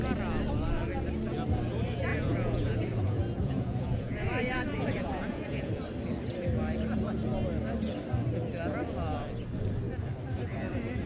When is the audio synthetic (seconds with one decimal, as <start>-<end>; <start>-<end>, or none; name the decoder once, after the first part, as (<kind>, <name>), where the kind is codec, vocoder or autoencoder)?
2.1-5.7 (vocoder, Vocos)